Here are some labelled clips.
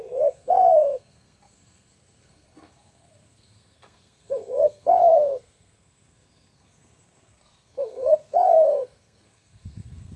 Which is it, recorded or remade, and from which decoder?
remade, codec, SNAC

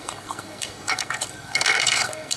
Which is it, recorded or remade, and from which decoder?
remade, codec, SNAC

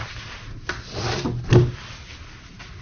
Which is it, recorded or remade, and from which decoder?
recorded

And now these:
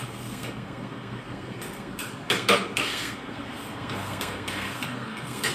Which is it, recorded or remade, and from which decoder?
remade, codec, SNAC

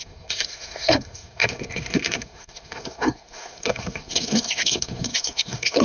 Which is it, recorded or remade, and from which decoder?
remade, codec, SNAC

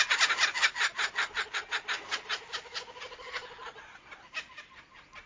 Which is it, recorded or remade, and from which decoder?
recorded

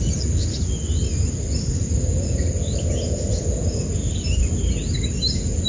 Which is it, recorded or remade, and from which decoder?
recorded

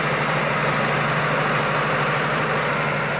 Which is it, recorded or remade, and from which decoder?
recorded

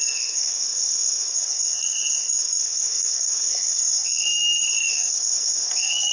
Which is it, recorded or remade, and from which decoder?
remade, codec, SNAC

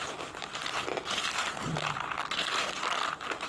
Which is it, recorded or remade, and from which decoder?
recorded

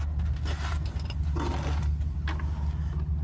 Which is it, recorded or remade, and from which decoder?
recorded